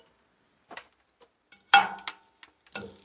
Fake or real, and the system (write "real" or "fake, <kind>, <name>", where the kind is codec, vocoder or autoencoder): real